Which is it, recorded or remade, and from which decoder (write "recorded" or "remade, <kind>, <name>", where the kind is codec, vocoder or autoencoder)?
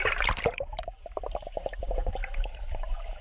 remade, vocoder, BigVGAN v2